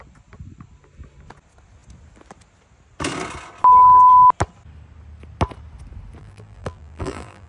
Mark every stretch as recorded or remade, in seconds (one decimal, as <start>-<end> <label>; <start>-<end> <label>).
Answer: 0.0-6.2 recorded; 6.2-7.5 remade